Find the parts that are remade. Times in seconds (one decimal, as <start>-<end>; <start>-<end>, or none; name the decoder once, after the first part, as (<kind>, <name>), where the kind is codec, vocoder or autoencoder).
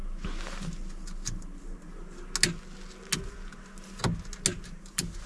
none